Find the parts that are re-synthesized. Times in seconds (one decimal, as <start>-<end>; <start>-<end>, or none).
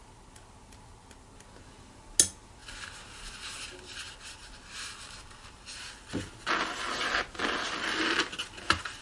none